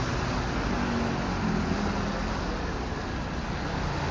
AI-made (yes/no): no